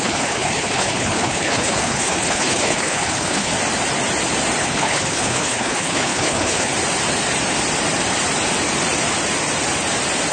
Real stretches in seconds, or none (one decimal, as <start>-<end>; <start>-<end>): 3.5-4.6; 6.7-10.3